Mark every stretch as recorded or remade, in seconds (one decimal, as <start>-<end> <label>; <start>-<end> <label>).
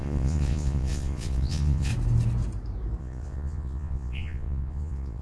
0.0-1.9 remade; 1.9-3.0 recorded; 3.0-5.2 remade